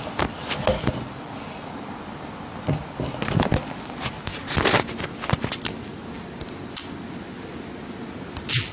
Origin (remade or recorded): recorded